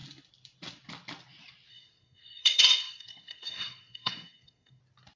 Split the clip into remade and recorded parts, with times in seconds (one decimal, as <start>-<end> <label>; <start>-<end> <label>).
0.0-1.7 recorded; 1.7-4.8 remade; 4.8-5.2 recorded